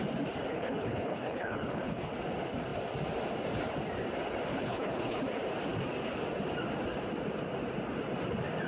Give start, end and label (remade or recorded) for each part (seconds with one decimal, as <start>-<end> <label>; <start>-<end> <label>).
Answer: 0.0-0.5 recorded; 0.5-2.1 remade; 2.1-4.5 recorded; 4.5-5.2 remade; 5.2-8.7 recorded